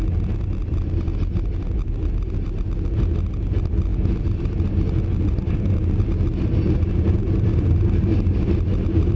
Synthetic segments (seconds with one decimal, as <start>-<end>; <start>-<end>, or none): none